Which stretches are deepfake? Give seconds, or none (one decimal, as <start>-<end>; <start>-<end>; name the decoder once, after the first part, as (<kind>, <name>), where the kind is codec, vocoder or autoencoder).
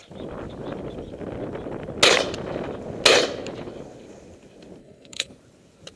4.8-5.3 (codec, SNAC)